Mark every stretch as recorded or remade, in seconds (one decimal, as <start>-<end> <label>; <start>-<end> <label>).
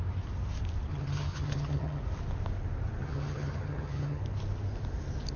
0.0-0.9 recorded; 0.9-2.0 remade; 2.0-3.0 recorded; 3.0-4.2 remade; 4.2-5.4 recorded